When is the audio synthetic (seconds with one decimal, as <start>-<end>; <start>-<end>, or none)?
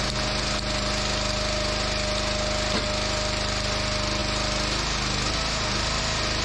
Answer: none